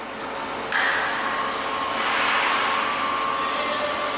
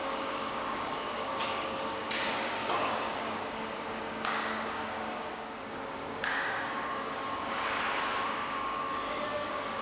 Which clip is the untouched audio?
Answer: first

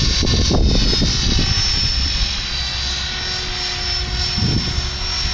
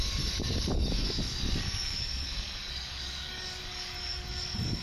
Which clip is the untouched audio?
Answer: first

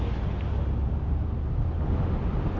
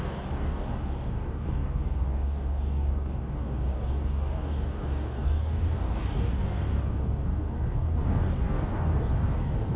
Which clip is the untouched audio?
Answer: first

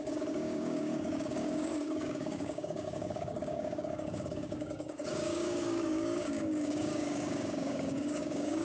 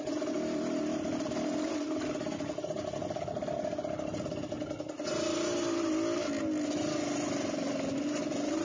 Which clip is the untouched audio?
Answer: second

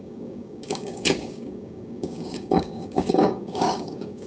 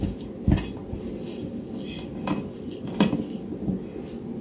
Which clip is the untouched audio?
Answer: second